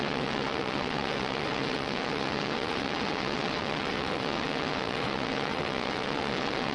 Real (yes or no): no